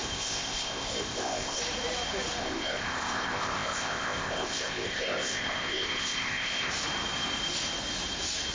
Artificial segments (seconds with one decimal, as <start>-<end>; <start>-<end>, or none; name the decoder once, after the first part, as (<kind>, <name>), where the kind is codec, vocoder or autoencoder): 0.0-1.6 (codec, ZipCodec); 2.4-6.7